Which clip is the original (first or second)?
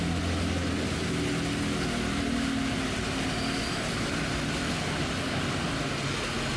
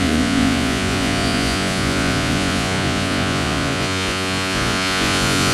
first